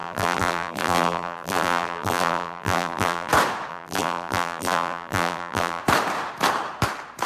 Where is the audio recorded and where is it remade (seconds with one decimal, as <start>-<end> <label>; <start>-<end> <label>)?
0.0-3.3 remade; 3.3-3.7 recorded; 3.7-5.8 remade; 5.8-7.3 recorded